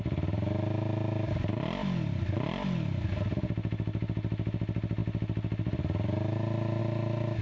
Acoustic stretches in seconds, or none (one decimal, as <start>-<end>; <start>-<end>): 0.0-7.4